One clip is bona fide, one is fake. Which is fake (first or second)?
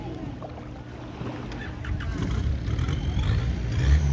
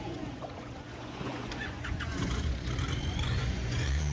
second